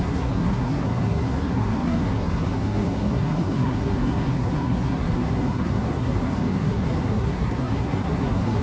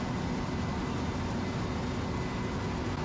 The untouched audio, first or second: second